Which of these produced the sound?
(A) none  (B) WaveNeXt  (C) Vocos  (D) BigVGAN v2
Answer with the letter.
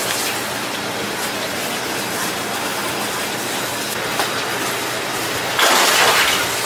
A